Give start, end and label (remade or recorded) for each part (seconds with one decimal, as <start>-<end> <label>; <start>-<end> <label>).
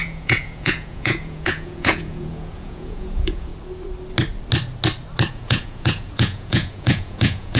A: 0.0-3.5 remade; 3.5-5.3 recorded; 5.3-7.6 remade